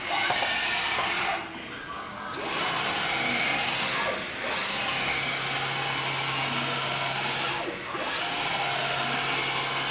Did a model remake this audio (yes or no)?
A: no